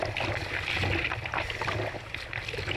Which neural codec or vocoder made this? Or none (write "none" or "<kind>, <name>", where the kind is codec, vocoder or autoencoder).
none